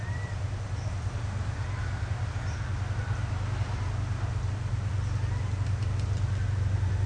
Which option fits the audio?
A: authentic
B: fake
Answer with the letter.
A